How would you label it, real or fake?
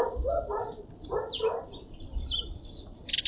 real